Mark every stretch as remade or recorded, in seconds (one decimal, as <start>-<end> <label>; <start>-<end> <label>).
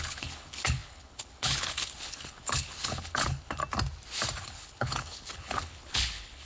0.0-3.6 remade; 3.6-4.4 recorded; 4.4-6.5 remade